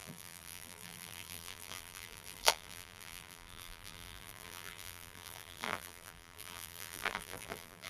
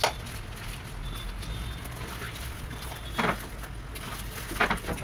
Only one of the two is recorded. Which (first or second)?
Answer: second